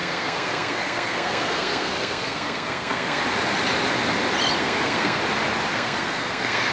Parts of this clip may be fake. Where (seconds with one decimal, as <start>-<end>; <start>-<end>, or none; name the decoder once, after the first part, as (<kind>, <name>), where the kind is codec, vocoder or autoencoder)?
0.0-3.2 (codec, SNAC); 4.6-5.2; 5.7-6.7